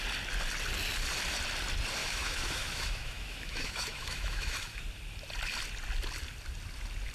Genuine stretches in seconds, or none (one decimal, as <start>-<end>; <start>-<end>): 0.0-2.0; 4.8-7.1